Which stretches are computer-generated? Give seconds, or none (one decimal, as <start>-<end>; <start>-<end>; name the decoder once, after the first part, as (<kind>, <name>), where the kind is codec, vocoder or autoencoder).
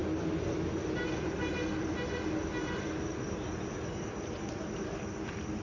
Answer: 3.3-5.6 (vocoder, BigVGAN v2)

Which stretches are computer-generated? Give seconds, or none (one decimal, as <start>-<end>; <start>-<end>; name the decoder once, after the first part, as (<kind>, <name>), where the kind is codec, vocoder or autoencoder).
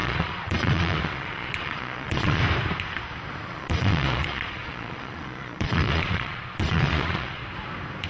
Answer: 0.0-2.4 (vocoder, Vocos); 3.5-7.4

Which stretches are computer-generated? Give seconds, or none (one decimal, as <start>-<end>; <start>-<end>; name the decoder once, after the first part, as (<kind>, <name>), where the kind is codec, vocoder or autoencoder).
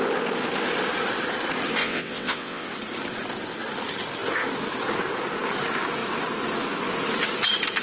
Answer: 1.8-2.7 (vocoder, WaveNeXt)